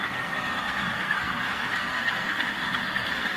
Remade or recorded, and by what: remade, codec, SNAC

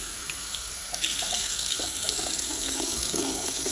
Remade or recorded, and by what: remade, codec, SNAC